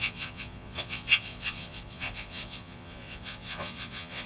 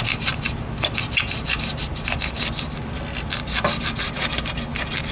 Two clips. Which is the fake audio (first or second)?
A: first